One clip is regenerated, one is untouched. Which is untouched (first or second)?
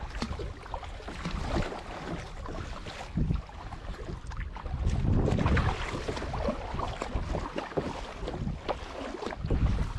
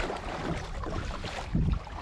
first